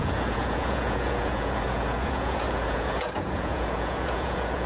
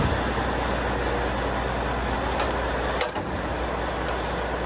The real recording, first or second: second